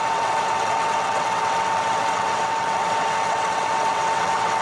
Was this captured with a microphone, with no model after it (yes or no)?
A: no